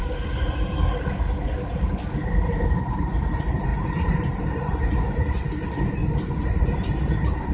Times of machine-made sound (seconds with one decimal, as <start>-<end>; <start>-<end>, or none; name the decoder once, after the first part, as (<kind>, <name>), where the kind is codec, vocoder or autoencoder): 2.4-6.0 (vocoder, BigVGAN v2); 6.6-7.5